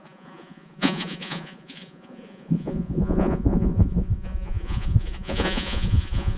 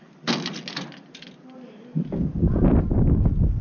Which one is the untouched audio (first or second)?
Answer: second